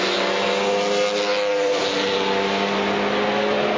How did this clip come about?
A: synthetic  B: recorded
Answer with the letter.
B